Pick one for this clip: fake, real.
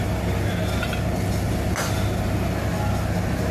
real